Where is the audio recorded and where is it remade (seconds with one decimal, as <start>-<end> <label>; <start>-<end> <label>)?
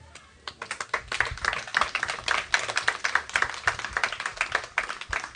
0.0-5.4 recorded